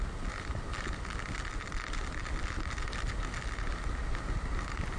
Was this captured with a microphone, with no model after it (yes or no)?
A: yes